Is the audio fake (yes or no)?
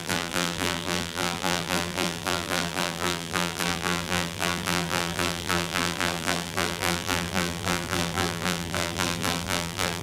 yes